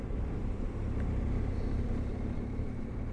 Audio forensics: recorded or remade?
remade